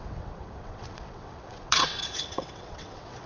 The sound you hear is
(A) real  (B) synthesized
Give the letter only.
B